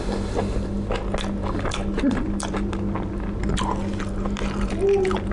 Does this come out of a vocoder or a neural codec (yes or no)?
no